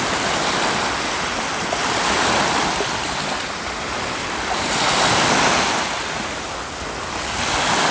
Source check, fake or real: real